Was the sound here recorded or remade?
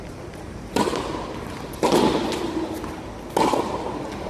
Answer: recorded